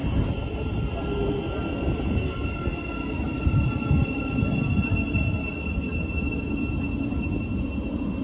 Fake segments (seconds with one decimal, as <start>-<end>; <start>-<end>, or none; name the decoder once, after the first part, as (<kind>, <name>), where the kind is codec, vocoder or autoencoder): none